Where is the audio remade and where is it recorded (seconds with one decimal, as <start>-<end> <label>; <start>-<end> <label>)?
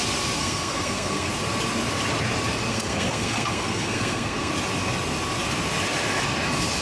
0.0-0.4 recorded; 0.4-1.3 remade; 1.3-2.7 recorded; 2.7-4.5 remade; 4.5-6.8 recorded